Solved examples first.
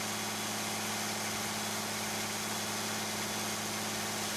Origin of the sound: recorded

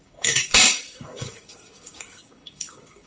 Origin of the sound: remade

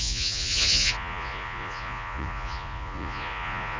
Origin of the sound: remade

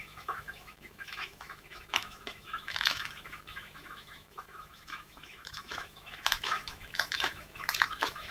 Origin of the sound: remade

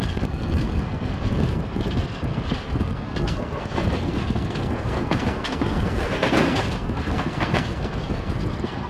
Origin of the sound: remade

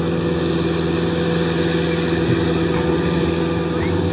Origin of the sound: recorded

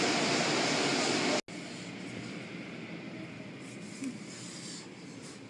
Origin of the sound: recorded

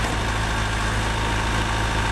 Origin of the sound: recorded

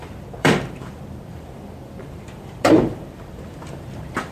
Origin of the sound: remade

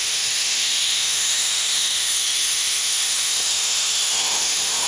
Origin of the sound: remade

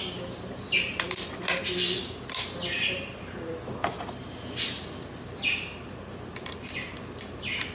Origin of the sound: recorded